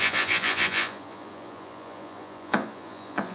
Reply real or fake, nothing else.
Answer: fake